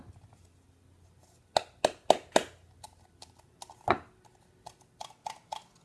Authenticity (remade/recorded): recorded